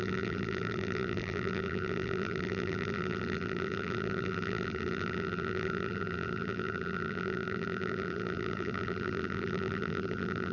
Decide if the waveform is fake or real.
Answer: fake